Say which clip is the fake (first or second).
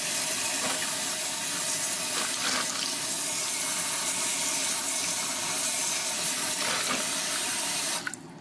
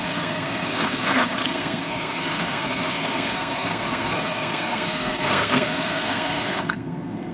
second